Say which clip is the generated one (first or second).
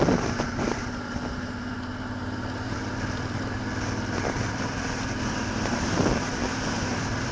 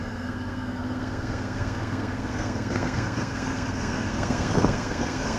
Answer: second